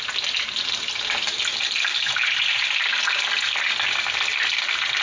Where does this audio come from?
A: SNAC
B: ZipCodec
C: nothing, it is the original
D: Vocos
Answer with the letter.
C